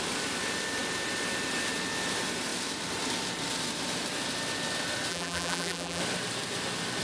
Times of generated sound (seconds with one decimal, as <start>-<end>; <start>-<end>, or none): 5.1-6.0